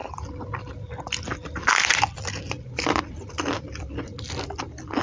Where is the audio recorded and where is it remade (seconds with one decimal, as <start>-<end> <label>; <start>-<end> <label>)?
0.0-5.0 recorded